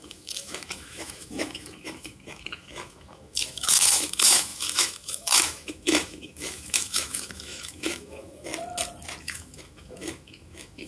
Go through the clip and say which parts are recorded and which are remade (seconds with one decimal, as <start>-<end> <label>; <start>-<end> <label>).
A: 0.0-8.5 remade; 8.5-9.2 recorded; 9.2-10.9 remade